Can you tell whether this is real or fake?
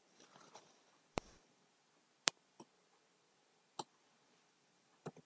real